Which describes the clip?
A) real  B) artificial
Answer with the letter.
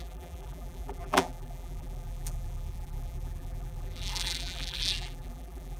B